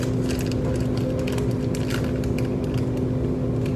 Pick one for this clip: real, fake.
real